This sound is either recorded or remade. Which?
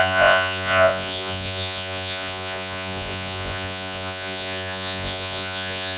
remade